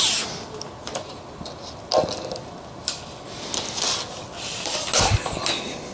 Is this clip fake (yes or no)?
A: no